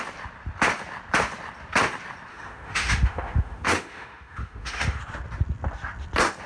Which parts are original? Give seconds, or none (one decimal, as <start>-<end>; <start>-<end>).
0.0-2.3; 5.0-6.5